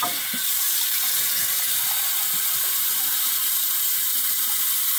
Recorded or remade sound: recorded